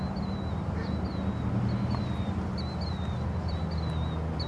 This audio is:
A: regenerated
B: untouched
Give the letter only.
B